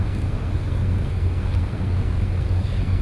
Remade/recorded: remade